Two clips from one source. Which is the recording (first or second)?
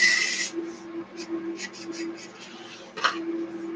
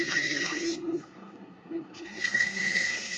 first